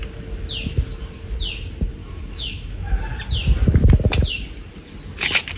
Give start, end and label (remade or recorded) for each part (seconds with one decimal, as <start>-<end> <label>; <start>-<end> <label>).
0.0-2.0 recorded; 2.0-3.0 remade; 3.0-5.6 recorded